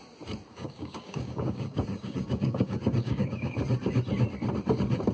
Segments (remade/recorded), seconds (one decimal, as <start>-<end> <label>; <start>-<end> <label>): 0.0-0.5 recorded; 0.5-3.6 remade; 3.6-5.1 recorded